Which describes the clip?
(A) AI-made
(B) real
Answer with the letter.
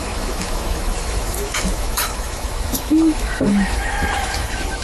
A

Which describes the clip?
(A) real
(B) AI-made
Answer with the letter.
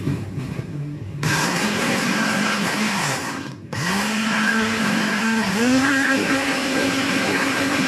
B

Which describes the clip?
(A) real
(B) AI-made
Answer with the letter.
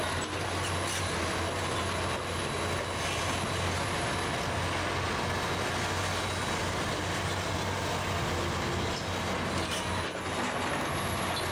A